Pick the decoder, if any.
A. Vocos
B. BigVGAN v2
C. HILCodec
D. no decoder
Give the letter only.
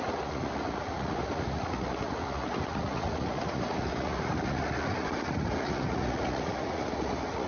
A